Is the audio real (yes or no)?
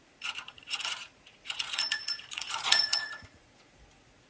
no